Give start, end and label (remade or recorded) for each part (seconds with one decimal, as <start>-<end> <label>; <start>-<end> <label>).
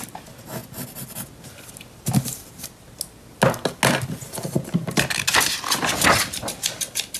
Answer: 0.0-7.2 recorded